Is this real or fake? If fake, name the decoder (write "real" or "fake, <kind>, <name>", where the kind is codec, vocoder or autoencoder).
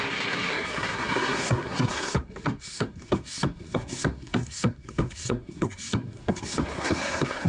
fake, codec, SNAC